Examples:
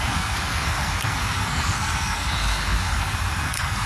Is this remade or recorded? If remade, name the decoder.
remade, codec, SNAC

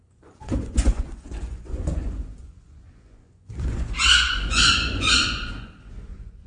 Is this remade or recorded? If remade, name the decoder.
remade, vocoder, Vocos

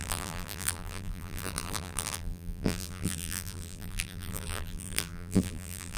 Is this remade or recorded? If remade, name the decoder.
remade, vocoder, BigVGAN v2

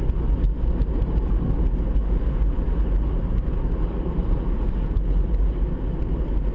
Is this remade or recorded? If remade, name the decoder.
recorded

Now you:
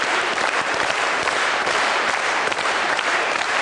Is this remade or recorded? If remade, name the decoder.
remade, vocoder, BigVGAN v2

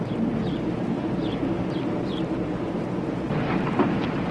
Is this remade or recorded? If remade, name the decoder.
remade, vocoder, BigVGAN v2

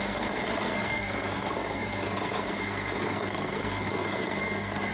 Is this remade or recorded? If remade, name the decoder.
remade, codec, SNAC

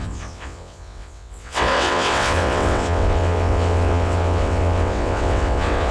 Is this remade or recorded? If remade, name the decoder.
remade, vocoder, WaveNeXt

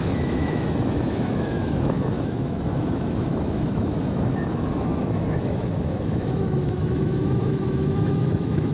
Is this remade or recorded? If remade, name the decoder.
remade, autoencoder, DAC-VAE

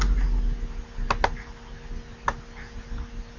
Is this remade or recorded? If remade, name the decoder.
recorded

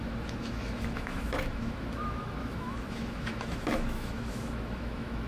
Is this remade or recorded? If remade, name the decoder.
remade, autoencoder, DAC-VAE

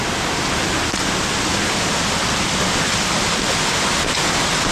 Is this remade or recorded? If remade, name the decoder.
recorded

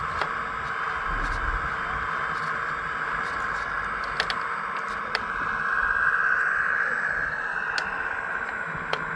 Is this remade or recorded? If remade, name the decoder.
recorded